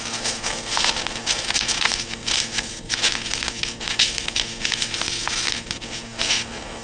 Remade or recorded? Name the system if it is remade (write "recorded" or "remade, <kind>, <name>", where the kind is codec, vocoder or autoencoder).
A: remade, codec, SNAC